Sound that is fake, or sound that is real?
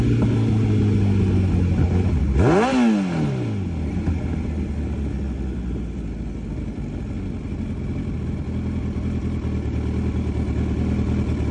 real